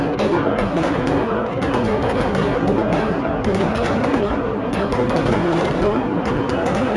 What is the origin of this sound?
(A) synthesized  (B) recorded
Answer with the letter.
A